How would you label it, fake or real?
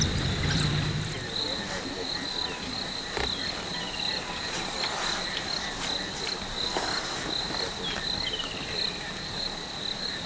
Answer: real